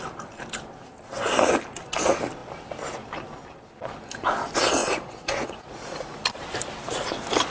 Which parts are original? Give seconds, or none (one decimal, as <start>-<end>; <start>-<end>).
0.0-4.8; 6.3-7.5

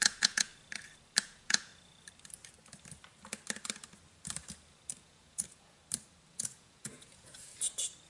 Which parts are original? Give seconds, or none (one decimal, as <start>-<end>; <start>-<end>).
0.5-1.2; 1.7-5.0; 5.8-6.3; 7.5-8.1

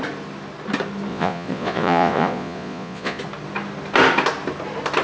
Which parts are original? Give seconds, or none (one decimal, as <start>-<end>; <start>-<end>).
0.0-1.1; 3.2-5.0

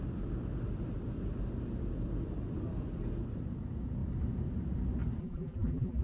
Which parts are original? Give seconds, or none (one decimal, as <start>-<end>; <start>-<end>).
0.0-5.2